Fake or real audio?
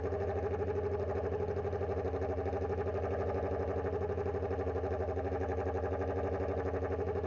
real